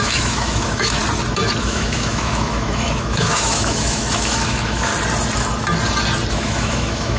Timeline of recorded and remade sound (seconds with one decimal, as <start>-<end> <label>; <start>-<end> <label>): 0.0-1.0 remade; 1.0-1.6 recorded; 1.6-4.9 remade; 4.9-6.3 recorded; 6.3-7.2 remade